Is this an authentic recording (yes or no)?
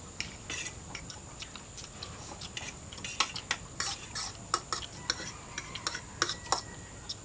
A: yes